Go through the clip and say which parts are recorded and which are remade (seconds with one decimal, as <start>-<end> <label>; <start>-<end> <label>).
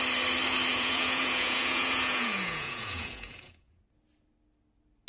0.0-0.7 recorded; 0.7-3.8 remade; 3.8-5.1 recorded